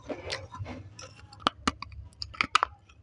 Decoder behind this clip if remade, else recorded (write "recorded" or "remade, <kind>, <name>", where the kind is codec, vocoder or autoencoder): recorded